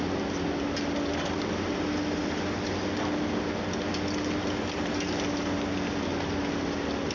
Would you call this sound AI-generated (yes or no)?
no